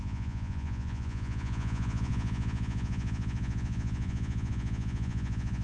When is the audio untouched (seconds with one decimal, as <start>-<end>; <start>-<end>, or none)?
none